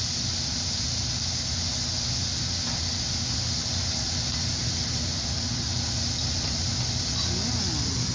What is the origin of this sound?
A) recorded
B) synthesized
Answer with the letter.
A